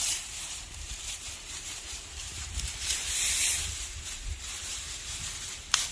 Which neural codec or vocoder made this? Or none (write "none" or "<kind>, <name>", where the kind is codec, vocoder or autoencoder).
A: vocoder, BigVGAN v2